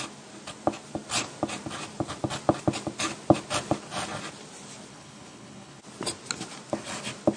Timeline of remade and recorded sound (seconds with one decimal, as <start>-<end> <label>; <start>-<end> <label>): 0.0-4.9 recorded; 4.9-5.8 remade; 5.8-7.4 recorded